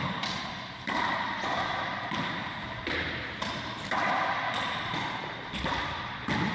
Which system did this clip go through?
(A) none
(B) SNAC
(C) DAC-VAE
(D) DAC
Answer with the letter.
A